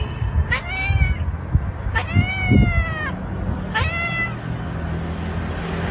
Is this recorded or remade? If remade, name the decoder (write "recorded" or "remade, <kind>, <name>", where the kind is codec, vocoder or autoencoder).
recorded